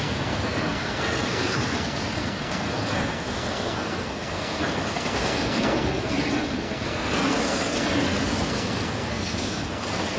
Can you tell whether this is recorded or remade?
remade